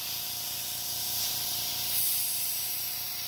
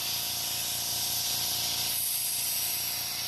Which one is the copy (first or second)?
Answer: first